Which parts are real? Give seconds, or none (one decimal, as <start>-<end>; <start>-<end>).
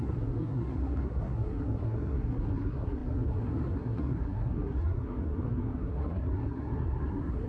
none